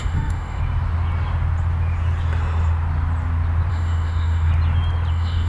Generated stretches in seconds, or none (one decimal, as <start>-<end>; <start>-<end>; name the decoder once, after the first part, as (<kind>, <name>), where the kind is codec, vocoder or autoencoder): 0.0-0.6 (autoencoder, DAC-VAE); 3.7-4.5; 5.1-5.5